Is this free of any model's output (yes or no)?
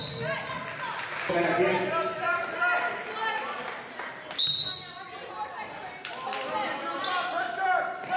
yes